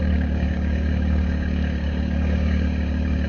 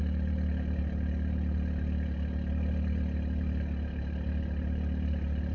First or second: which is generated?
first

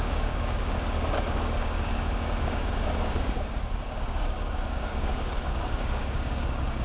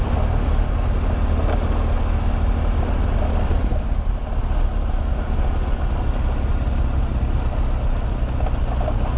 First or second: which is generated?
first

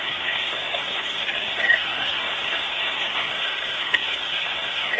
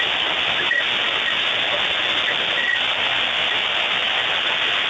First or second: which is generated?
first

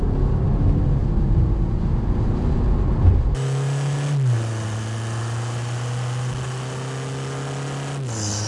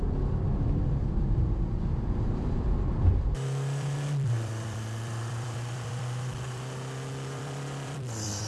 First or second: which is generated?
second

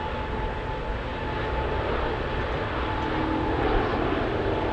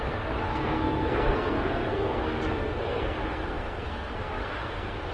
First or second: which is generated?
second